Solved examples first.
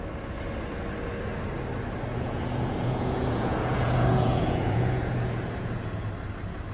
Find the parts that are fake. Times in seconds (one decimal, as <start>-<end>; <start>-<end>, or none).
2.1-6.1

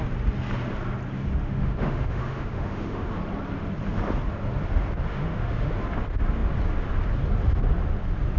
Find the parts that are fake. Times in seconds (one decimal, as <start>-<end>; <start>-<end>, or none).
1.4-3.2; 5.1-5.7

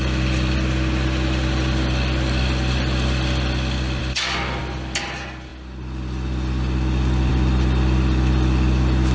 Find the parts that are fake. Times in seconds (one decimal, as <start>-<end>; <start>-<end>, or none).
none

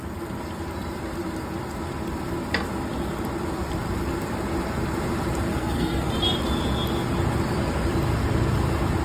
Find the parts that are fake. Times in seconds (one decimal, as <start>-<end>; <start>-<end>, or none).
5.5-6.1

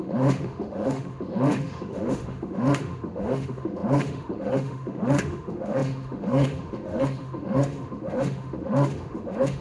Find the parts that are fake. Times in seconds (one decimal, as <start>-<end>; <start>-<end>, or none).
0.0-9.6

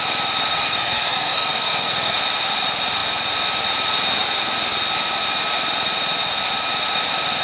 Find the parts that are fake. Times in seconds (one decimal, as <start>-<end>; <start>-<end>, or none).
0.5-2.2